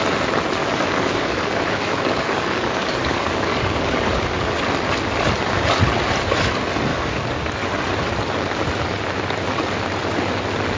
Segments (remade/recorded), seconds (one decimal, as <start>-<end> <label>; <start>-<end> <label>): 0.0-0.6 recorded; 0.6-4.6 remade; 4.6-6.9 recorded; 6.9-7.6 remade; 7.6-10.8 recorded